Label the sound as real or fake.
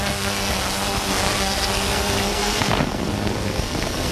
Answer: fake